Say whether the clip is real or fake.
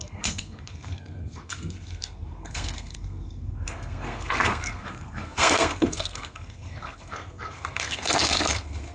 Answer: fake